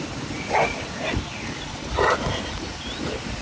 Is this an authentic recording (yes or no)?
yes